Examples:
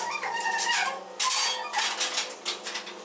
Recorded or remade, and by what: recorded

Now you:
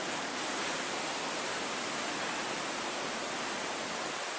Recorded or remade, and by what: recorded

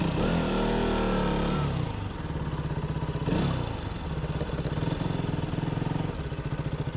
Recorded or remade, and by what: recorded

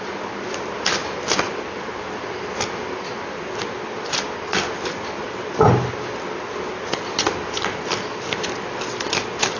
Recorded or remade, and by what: recorded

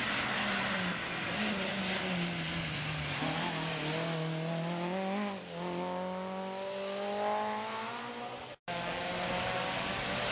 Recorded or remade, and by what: recorded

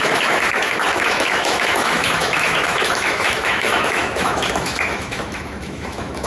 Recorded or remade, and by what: remade, autoencoder, DAC-VAE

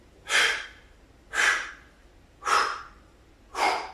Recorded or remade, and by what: recorded